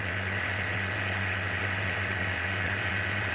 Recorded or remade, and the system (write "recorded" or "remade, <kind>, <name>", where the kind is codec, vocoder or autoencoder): remade, vocoder, WaveNeXt